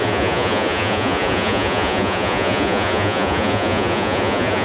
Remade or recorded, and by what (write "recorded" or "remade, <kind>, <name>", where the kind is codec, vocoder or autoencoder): remade, vocoder, Vocos